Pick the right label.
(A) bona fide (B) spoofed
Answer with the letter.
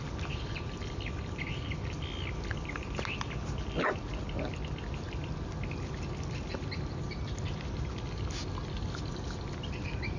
A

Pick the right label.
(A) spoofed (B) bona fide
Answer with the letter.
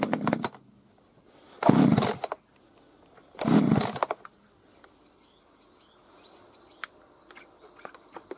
B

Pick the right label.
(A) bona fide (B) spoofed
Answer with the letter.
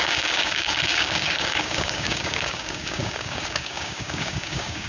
B